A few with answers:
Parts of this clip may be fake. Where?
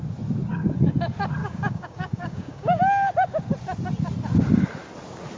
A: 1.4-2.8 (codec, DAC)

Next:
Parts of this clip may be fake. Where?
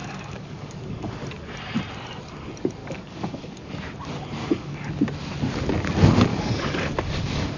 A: 0.0-1.2 (codec, DAC); 2.8-3.7; 4.4-4.9; 6.3-7.6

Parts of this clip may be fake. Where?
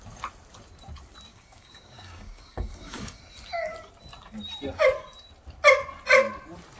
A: 1.3-3.2 (codec, DAC)